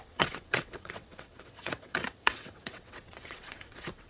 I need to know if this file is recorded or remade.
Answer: remade